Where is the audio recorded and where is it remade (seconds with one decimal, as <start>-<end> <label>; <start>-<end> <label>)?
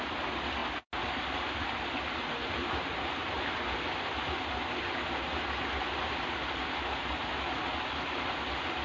0.0-8.8 recorded